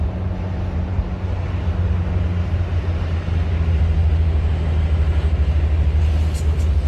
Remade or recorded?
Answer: recorded